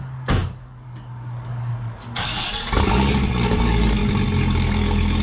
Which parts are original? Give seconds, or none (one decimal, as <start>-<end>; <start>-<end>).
4.0-4.6